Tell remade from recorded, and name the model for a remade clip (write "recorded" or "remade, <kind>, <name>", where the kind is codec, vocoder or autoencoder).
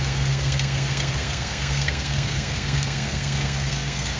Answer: remade, codec, SNAC